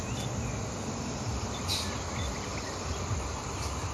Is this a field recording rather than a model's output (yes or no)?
yes